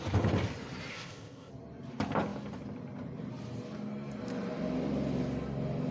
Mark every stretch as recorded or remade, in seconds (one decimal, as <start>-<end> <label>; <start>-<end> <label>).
0.0-0.9 recorded; 0.9-1.5 remade; 1.5-5.9 recorded